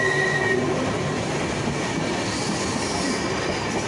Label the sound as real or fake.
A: real